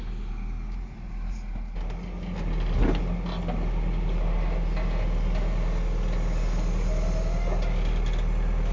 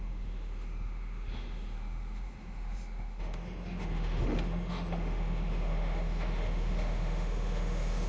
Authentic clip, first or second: first